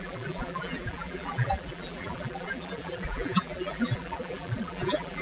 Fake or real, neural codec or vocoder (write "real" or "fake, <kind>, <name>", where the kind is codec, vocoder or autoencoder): fake, vocoder, BigVGAN v2